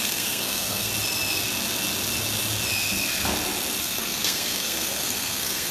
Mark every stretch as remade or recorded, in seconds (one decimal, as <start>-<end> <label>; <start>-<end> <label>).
0.0-0.9 remade; 0.9-3.8 recorded; 3.8-5.7 remade